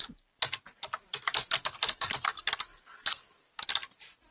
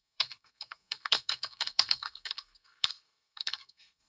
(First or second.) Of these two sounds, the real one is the first